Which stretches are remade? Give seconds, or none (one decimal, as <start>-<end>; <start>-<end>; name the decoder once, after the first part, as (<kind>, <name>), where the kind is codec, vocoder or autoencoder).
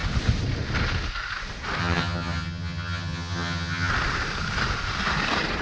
1.8-3.9 (vocoder, HiFi-GAN)